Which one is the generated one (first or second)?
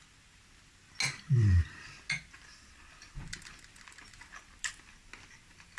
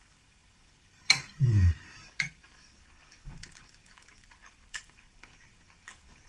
second